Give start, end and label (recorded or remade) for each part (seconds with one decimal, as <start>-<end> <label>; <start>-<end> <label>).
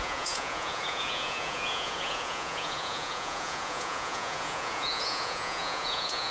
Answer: 0.0-6.3 remade